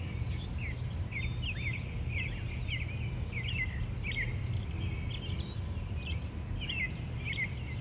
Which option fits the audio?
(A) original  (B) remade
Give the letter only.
A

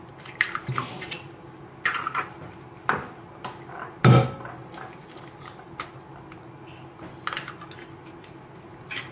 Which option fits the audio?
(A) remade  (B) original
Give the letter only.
B